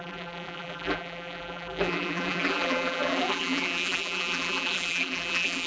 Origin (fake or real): fake